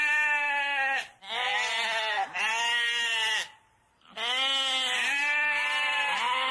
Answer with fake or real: real